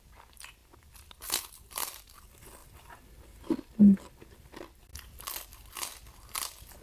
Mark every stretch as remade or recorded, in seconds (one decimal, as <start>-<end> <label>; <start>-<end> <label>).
0.0-2.6 recorded; 2.6-4.0 remade; 4.0-6.8 recorded

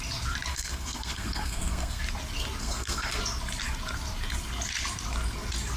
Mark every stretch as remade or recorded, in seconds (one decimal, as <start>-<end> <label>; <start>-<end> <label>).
0.0-0.5 recorded; 0.5-2.0 remade; 2.0-2.6 recorded; 2.6-3.2 remade; 3.2-5.8 recorded

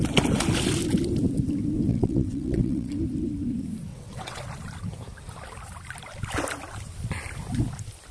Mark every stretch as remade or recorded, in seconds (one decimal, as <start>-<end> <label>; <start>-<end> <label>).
0.0-1.9 recorded; 1.9-2.9 remade; 2.9-3.9 recorded; 3.9-4.4 remade; 4.4-8.1 recorded